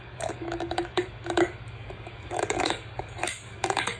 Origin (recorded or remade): remade